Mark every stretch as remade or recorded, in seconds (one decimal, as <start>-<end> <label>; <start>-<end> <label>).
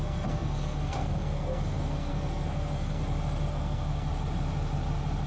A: 0.0-3.0 remade; 3.0-3.5 recorded; 3.5-4.1 remade; 4.1-5.3 recorded